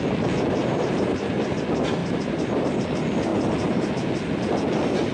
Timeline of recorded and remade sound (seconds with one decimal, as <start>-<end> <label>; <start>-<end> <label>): 0.0-0.6 recorded; 0.6-1.4 remade; 1.4-2.0 recorded; 2.0-2.9 remade; 2.9-5.1 recorded